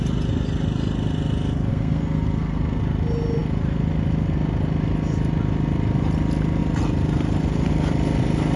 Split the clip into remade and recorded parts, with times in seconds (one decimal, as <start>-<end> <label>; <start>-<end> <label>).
0.0-1.7 recorded; 1.7-2.8 remade; 2.8-8.6 recorded